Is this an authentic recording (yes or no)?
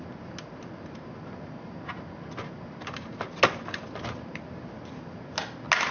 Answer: yes